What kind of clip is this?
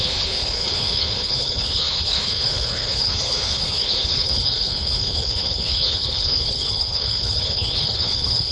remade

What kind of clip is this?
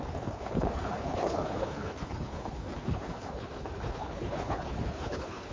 remade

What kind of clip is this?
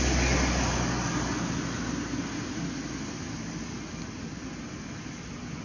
recorded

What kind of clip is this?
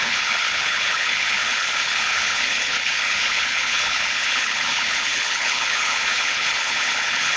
remade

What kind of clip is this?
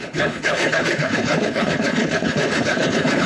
remade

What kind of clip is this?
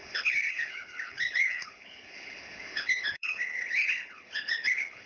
remade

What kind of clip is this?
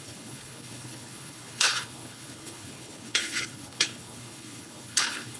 remade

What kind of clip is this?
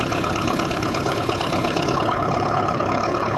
remade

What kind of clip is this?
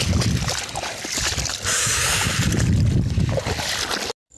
recorded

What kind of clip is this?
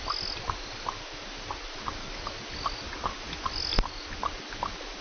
recorded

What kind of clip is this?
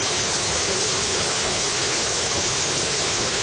remade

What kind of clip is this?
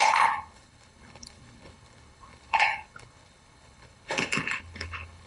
remade